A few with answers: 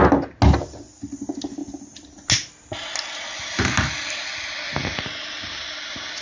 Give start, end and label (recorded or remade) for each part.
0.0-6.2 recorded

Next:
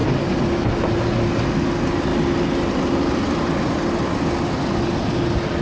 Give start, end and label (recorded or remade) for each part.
0.0-0.8 remade; 0.8-5.6 recorded

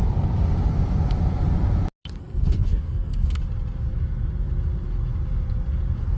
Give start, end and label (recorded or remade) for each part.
0.0-2.2 recorded; 2.2-3.4 remade; 3.4-6.2 recorded